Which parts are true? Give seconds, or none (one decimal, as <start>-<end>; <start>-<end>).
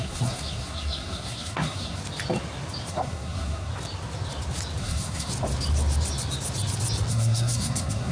2.0-2.9; 3.7-4.8; 5.3-7.1